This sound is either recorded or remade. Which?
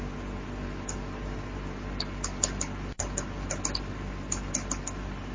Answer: recorded